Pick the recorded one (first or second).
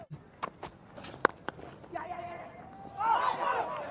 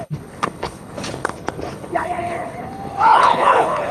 first